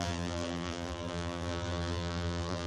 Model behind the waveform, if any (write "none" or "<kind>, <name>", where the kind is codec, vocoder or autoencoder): vocoder, BigVGAN v2